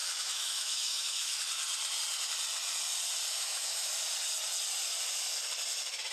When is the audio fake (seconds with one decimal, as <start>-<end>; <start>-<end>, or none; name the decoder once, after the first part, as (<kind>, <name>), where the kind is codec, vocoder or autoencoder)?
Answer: 0.0-1.4 (autoencoder, DAC-VAE); 3.3-3.9